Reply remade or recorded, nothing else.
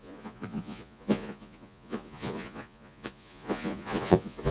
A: remade